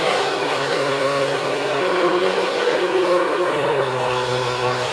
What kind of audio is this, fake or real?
fake